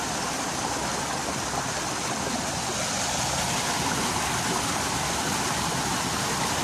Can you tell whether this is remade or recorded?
recorded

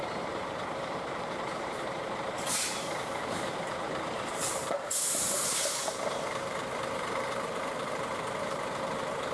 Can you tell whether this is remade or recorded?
remade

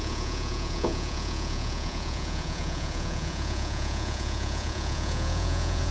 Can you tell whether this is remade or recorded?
remade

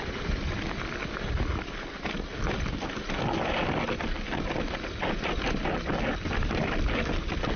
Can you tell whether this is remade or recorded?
recorded